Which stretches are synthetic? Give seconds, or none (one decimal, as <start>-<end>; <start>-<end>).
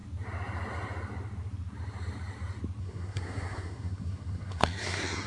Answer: 2.8-5.3